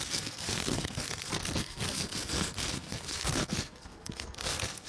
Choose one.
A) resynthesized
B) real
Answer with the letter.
A